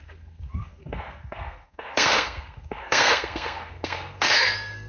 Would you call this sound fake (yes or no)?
yes